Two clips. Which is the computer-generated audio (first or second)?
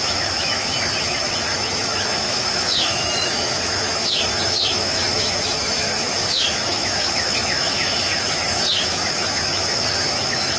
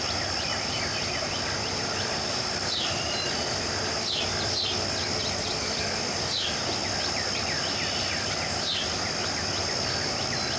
first